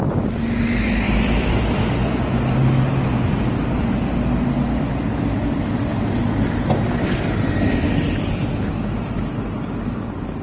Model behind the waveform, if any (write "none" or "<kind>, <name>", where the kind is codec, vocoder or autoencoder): none